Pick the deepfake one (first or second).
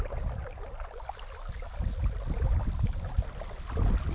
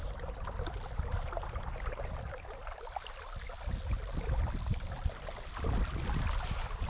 second